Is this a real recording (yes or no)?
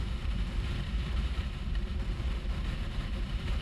no